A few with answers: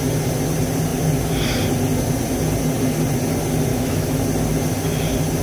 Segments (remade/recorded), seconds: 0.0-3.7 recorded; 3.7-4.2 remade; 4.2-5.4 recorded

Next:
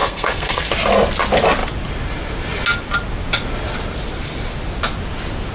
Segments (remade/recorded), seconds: 0.0-0.7 remade; 0.7-5.5 recorded

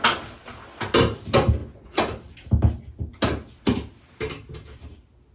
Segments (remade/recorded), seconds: 0.0-5.3 recorded

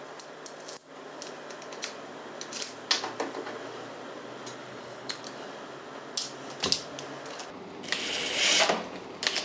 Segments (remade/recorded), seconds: 0.0-4.7 recorded; 4.7-5.2 remade; 5.2-9.4 recorded

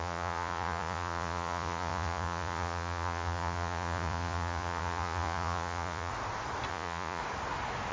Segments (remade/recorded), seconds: 0.0-6.1 remade; 6.1-6.7 recorded; 6.7-7.2 remade; 7.2-7.9 recorded

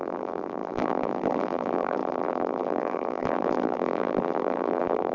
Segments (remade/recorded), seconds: 0.0-5.1 remade

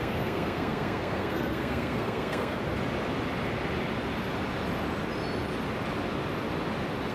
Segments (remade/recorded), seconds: 0.0-2.6 remade; 2.6-7.1 recorded

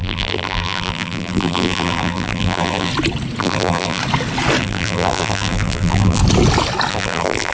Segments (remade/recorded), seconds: 0.0-2.9 remade; 2.9-3.4 recorded; 3.4-4.0 remade; 4.0-4.6 recorded; 4.6-6.2 remade; 6.2-6.9 recorded; 6.9-7.5 remade